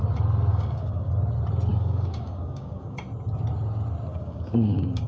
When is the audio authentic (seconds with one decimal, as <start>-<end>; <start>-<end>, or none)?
0.0-0.5; 1.1-1.7; 3.0-4.1